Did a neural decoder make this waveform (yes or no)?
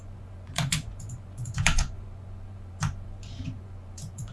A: yes